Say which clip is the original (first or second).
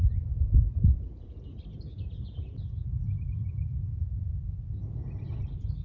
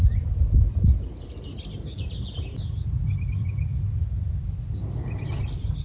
second